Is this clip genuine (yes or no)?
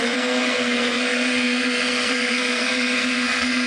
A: no